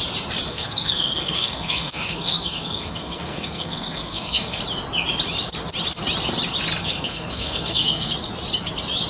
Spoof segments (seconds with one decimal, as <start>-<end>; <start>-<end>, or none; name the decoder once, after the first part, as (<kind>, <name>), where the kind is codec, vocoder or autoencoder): 0.5-4.6 (codec, SNAC); 6.8-8.1

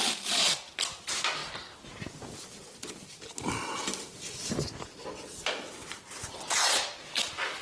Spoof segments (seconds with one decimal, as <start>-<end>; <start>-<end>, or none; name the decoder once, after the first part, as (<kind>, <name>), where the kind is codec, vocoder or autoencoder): none